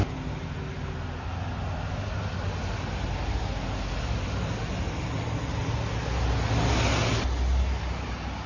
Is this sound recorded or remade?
recorded